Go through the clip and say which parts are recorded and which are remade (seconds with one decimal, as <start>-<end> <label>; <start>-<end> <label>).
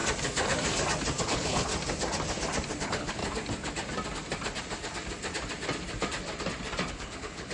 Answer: 0.0-1.2 recorded; 1.2-1.7 remade; 1.7-2.8 recorded; 2.8-3.2 remade; 3.2-6.9 recorded; 6.9-7.5 remade